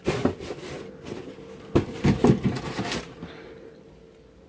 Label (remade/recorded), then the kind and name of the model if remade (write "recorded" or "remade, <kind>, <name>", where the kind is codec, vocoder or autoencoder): recorded